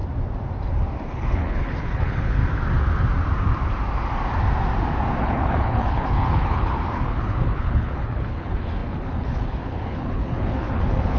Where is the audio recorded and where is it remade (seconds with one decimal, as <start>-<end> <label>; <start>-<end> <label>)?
0.0-1.1 recorded; 1.1-2.4 remade; 2.4-5.2 recorded; 5.2-11.2 remade